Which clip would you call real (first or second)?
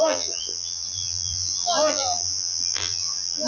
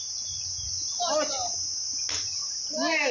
second